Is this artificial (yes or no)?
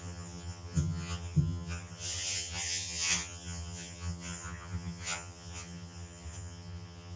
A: yes